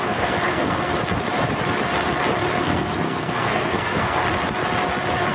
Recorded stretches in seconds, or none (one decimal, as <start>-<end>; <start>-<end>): 0.9-2.6; 4.2-5.3